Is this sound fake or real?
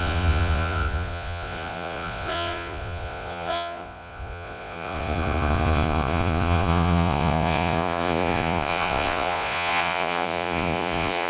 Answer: fake